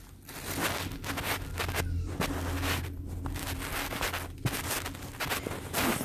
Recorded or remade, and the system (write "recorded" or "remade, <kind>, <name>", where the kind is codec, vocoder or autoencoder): recorded